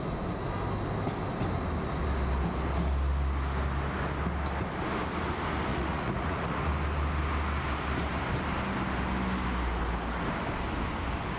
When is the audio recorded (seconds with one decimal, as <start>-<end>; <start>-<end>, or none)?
0.0-5.7; 6.7-11.4